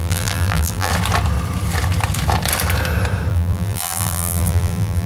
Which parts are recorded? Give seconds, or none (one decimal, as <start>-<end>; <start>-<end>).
0.9-3.3